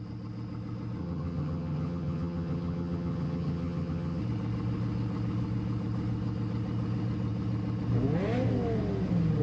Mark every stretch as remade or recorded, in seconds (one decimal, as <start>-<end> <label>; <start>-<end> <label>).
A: 0.0-1.0 recorded; 1.0-4.2 remade; 4.2-9.4 recorded